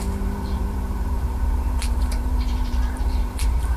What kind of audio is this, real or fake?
fake